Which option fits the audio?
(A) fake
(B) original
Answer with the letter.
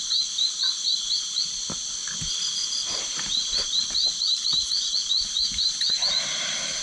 B